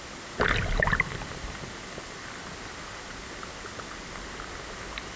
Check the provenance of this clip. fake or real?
real